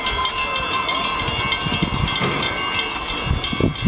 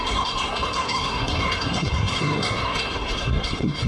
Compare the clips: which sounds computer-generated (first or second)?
second